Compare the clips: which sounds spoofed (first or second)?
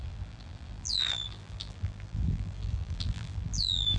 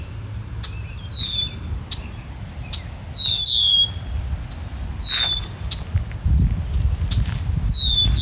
first